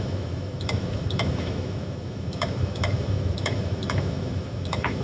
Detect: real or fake fake